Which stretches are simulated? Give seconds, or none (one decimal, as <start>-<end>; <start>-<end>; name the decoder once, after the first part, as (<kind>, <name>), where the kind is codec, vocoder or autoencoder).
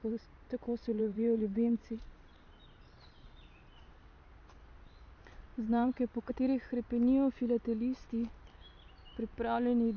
1.0-3.8 (vocoder, Vocos); 5.5-6.3